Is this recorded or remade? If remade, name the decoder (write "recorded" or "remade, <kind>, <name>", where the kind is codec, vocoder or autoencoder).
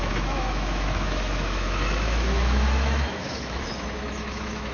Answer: remade, autoencoder, DAC-VAE